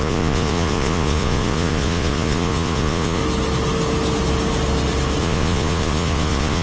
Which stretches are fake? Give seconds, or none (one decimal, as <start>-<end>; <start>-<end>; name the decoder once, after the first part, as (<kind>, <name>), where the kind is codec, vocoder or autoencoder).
0.0-3.2 (vocoder, Vocos); 5.2-6.6